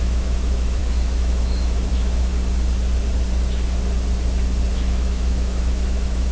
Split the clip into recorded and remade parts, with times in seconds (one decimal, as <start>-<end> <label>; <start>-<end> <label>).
0.0-2.3 remade; 2.3-4.7 recorded; 4.7-6.3 remade

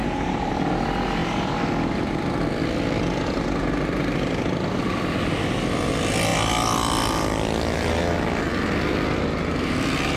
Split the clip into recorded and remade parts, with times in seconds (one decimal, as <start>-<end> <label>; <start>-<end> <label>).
0.0-1.2 recorded; 1.2-5.3 remade; 5.3-6.3 recorded; 6.3-8.0 remade; 8.0-10.2 recorded

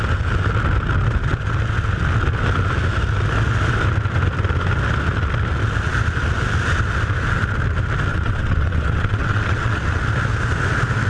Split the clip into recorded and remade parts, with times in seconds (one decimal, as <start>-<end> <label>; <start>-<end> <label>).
0.0-8.1 recorded; 8.1-9.8 remade; 9.8-11.1 recorded